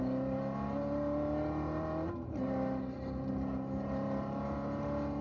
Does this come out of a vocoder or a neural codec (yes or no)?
no